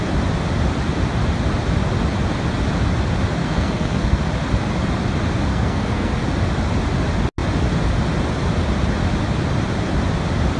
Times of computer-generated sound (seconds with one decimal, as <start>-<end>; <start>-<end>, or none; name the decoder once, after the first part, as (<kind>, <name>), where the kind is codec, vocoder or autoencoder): 3.4-4.2 (codec, SNAC); 5.5-6.1